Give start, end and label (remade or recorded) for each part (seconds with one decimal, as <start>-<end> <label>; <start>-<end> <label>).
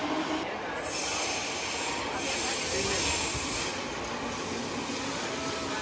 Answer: 0.0-5.8 recorded